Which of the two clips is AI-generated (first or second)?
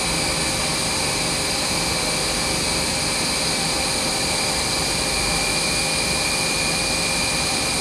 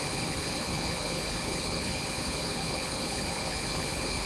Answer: second